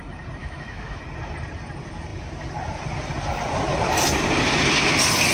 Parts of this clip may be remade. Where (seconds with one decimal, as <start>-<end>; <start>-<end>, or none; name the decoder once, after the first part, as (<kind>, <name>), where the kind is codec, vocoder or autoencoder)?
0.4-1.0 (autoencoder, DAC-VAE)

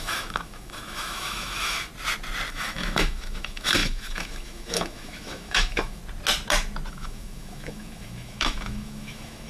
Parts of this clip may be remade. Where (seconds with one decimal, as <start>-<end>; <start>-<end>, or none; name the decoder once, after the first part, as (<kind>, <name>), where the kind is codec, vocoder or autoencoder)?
0.0-1.9 (autoencoder, DAC-VAE); 2.5-6.0; 6.9-9.5

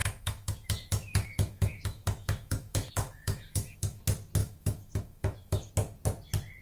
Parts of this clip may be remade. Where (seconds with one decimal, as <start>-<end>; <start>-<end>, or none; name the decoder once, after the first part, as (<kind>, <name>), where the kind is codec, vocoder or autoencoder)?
0.0-4.0 (autoencoder, DAC-VAE); 4.4-5.7